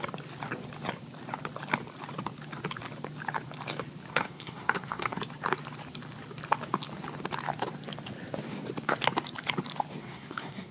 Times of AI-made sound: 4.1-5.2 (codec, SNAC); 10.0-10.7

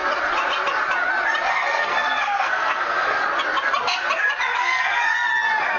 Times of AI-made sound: 1.5-3.2 (codec, SNAC); 4.6-5.3

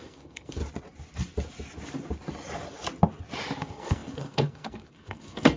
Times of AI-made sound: 0.0-0.6 (codec, SNAC); 3.6-5.6

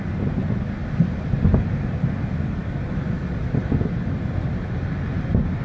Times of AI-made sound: none